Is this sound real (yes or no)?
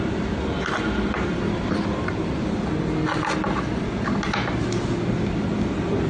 yes